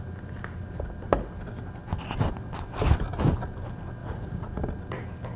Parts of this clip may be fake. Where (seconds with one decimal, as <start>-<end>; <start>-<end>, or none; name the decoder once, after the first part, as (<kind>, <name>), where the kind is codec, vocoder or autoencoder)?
4.0-4.6 (vocoder, Vocos)